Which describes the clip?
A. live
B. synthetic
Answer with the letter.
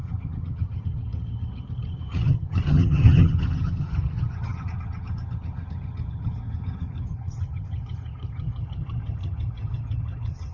B